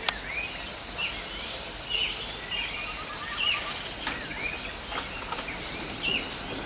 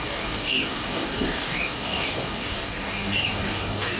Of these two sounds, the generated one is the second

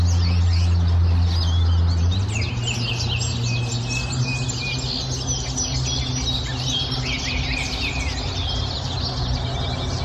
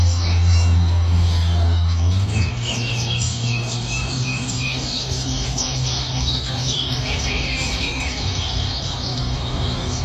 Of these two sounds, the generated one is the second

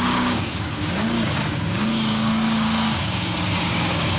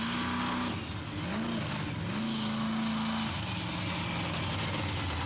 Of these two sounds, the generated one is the first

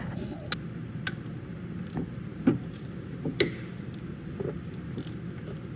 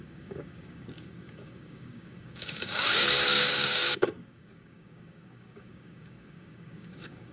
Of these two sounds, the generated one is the second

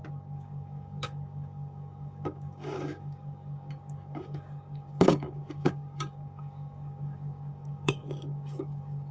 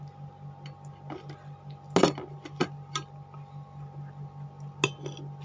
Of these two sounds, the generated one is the first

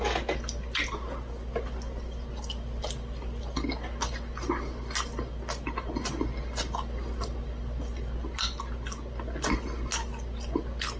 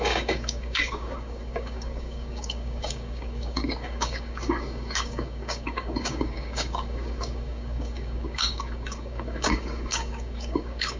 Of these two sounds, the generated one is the second